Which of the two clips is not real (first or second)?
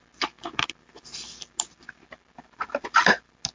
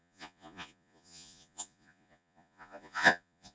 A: second